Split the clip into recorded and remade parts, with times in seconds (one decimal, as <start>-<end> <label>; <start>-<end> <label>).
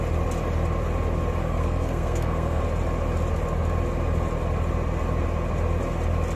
0.0-1.4 recorded; 1.4-2.6 remade; 2.6-6.4 recorded